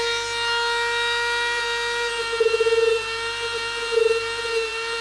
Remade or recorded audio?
recorded